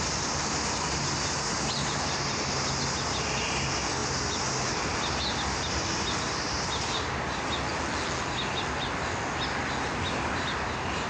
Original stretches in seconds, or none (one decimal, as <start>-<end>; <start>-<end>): 0.0-11.1